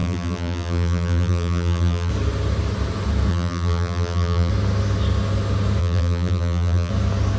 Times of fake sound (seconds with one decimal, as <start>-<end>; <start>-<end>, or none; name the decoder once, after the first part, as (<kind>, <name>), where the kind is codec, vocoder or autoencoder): 0.0-2.1 (vocoder, BigVGAN v2); 3.3-4.5; 5.8-6.9